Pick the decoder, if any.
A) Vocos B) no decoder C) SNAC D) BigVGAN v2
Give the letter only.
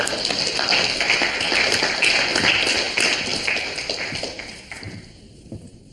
B